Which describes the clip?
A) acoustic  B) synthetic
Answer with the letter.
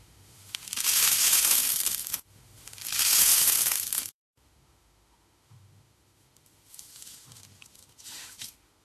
B